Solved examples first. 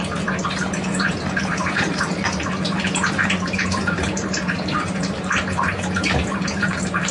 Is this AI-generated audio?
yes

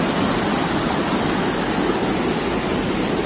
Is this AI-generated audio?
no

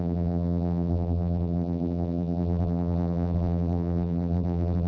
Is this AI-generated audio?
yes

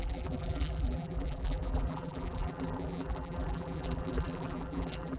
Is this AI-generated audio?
yes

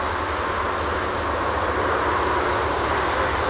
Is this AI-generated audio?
no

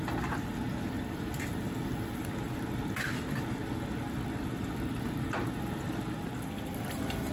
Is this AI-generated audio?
no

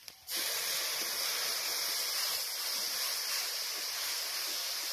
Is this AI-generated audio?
yes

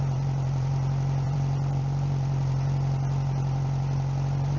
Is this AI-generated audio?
yes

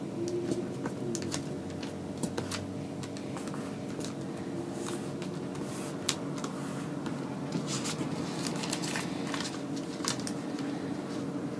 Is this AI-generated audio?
no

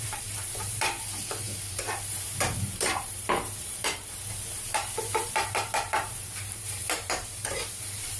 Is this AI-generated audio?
yes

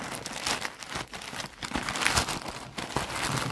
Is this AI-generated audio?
no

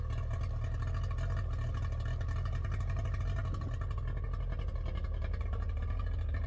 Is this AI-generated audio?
no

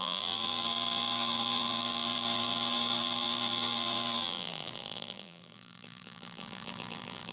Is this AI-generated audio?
yes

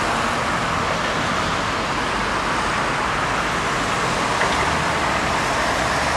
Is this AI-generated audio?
no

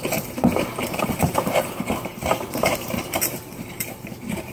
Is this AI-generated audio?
yes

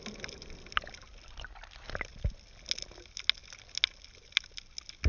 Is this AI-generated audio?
no